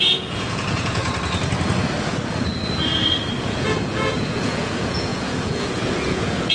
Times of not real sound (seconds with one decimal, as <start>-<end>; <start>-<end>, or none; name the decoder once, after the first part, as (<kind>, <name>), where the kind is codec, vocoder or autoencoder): 0.0-1.0 (vocoder, Vocos); 3.4-6.5